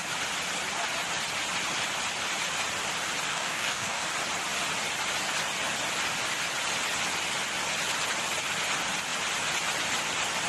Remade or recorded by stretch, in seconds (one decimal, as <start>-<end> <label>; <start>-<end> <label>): 0.0-3.3 recorded; 3.3-4.1 remade; 4.1-10.5 recorded